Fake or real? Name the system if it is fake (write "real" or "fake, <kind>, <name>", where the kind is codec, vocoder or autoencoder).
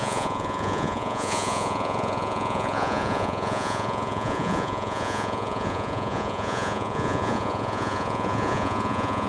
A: fake, vocoder, Vocos